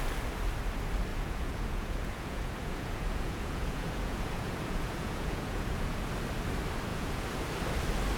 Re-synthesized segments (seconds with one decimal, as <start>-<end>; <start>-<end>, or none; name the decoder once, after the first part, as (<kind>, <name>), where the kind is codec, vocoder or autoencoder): 1.1-6.0 (vocoder, Vocos); 6.9-7.4